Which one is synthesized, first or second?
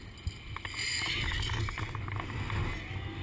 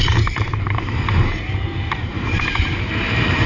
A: second